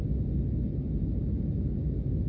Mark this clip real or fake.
real